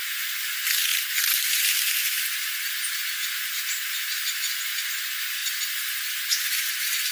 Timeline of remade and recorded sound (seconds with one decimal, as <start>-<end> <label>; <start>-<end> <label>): 0.0-7.1 recorded